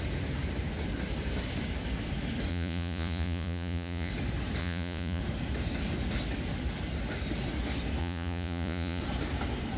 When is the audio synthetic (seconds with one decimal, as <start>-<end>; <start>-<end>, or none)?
2.5-4.1; 4.6-5.2; 8.0-9.0